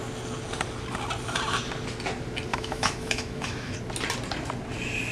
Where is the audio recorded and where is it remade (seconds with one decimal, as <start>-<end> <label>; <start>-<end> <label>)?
0.0-2.5 recorded; 2.5-3.7 remade; 3.7-5.1 recorded